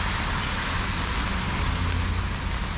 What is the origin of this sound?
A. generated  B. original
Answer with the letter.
B